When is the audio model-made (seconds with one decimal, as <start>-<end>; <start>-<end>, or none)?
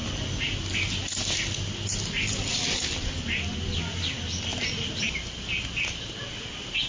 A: none